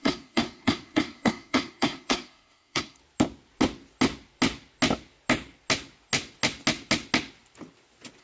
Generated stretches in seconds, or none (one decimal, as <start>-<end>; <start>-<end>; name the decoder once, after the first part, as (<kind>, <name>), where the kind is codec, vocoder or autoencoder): 0.0-3.0 (codec, SNAC)